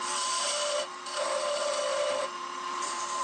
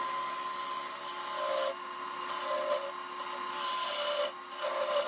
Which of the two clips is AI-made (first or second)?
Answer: first